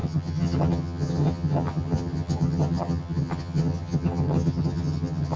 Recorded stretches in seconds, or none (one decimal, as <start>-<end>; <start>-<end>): none